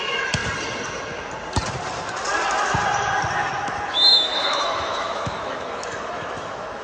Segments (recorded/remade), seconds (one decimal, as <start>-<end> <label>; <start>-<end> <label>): 0.0-0.4 remade; 0.4-3.6 recorded; 3.6-6.8 remade